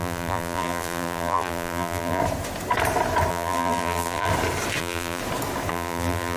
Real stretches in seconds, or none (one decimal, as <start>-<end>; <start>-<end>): 2.2-3.3; 4.3-4.8; 5.2-5.7

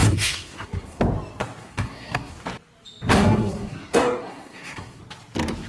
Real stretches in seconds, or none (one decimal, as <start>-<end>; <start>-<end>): 1.0-1.6; 2.3-3.1; 5.0-5.7

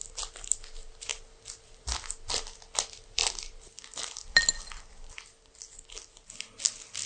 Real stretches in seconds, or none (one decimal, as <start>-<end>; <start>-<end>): 0.0-7.1